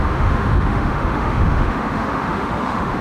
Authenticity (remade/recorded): remade